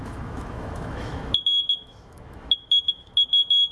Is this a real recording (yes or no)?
no